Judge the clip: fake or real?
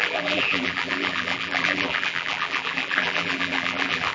fake